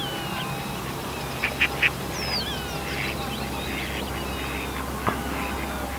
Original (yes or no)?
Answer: yes